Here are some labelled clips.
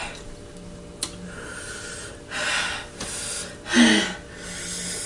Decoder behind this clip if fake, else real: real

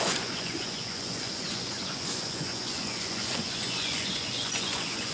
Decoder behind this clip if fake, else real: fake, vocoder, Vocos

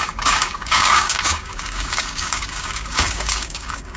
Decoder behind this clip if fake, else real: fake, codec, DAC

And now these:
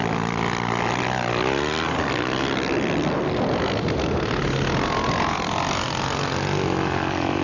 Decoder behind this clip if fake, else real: real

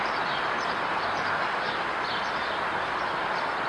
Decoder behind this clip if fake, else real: real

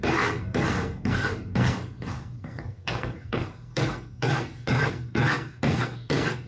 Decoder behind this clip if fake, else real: fake, codec, SNAC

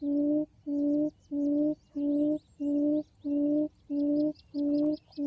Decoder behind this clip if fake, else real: real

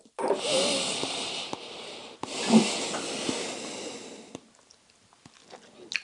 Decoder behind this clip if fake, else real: real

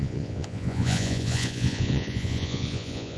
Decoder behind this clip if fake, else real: fake, vocoder, Vocos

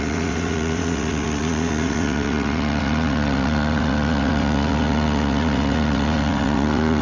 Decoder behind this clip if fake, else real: fake, vocoder, WaveNeXt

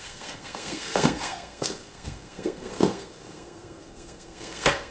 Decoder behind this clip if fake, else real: fake, codec, SNAC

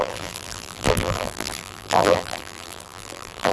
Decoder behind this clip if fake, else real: fake, vocoder, BigVGAN v2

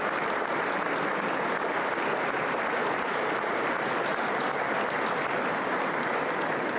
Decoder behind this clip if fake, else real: real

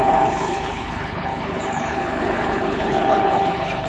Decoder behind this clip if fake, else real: fake, codec, HILCodec